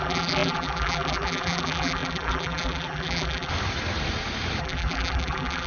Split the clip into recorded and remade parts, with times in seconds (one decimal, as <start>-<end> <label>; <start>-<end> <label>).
0.0-3.5 remade; 3.5-4.6 recorded; 4.6-5.7 remade